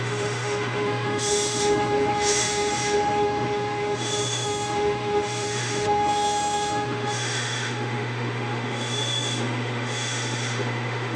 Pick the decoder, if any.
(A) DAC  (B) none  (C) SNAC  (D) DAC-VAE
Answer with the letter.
D